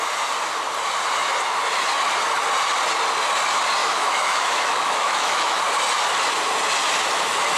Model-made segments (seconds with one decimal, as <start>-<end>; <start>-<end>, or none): 3.8-5.6